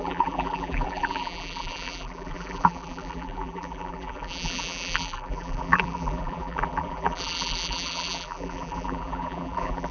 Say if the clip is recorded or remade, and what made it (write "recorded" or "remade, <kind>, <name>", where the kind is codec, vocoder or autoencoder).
remade, vocoder, BigVGAN v2